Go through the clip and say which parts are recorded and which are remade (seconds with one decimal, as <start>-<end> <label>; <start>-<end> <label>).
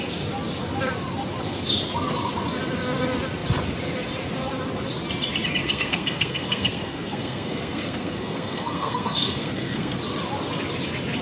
0.0-5.6 recorded; 5.6-10.0 remade; 10.0-11.2 recorded